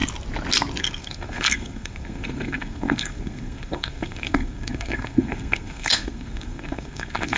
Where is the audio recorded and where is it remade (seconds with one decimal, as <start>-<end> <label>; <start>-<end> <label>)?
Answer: 0.0-0.8 recorded; 0.8-7.4 remade